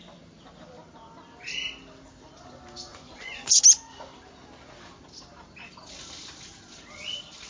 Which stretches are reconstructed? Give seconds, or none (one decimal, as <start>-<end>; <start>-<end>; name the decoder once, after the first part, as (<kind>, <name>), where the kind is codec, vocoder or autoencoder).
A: 2.9-3.6 (vocoder, Vocos)